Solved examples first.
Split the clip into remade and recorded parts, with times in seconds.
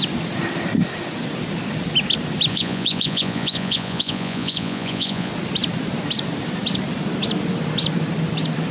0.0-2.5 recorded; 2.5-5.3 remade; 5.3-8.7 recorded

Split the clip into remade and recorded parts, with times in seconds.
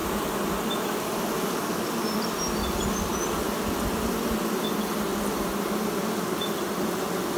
0.0-7.4 recorded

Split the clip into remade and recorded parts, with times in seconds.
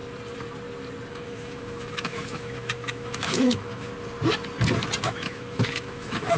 0.0-1.1 recorded; 1.1-3.9 remade; 3.9-5.0 recorded; 5.0-6.4 remade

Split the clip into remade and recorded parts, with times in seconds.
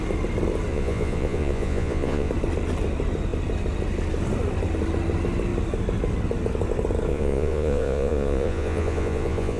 0.0-0.7 recorded; 0.7-2.3 remade; 2.3-7.1 recorded; 7.1-9.6 remade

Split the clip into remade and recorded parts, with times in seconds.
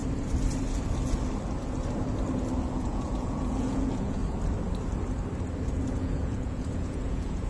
0.0-2.7 recorded; 2.7-4.2 remade; 4.2-5.9 recorded; 5.9-7.5 remade